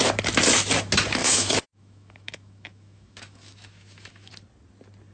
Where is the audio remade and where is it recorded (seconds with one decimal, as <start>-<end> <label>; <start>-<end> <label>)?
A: 0.0-1.2 recorded; 1.2-4.3 remade; 4.3-5.1 recorded